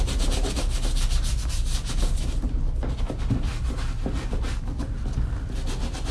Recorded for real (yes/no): yes